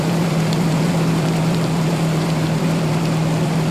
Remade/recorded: remade